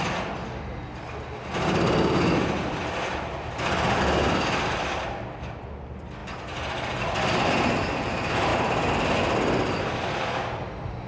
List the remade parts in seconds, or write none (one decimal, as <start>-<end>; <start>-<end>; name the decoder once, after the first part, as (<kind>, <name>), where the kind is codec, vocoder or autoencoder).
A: none